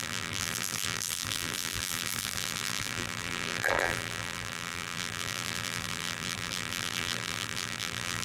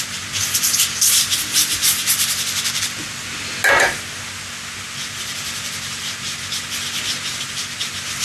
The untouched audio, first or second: second